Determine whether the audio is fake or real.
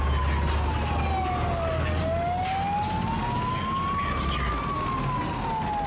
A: real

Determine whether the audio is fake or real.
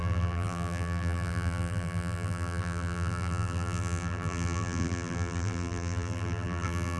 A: fake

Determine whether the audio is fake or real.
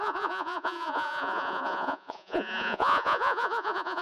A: fake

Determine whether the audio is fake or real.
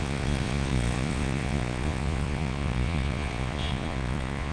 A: fake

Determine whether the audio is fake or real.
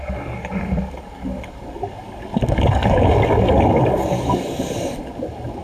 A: fake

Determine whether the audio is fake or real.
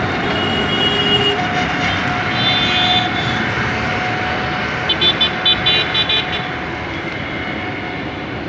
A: real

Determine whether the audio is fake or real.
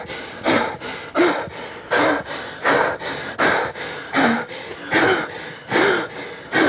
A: real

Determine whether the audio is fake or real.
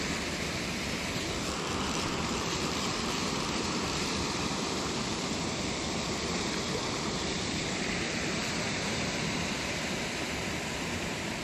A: fake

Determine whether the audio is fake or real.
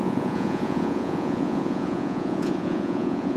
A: fake